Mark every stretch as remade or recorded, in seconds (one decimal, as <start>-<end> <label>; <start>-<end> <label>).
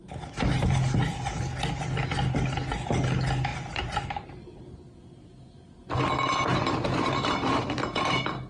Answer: 0.0-3.5 recorded; 3.5-4.4 remade; 4.4-6.5 recorded; 6.5-7.6 remade; 7.6-8.5 recorded